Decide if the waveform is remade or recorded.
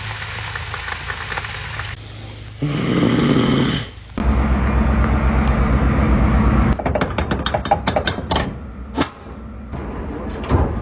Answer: recorded